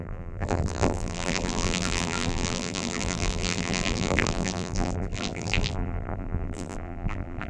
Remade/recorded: remade